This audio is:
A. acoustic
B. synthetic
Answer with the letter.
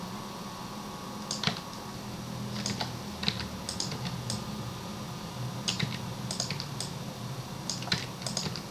A